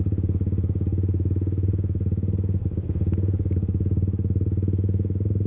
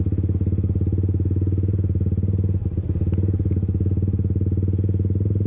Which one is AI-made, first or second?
first